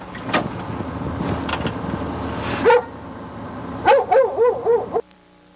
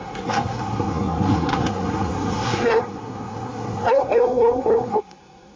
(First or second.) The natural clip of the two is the first